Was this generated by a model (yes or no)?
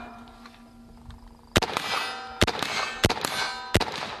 no